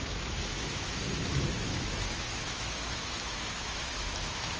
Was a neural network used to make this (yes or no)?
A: yes